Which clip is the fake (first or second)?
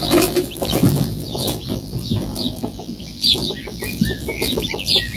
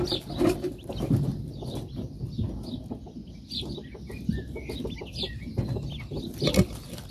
first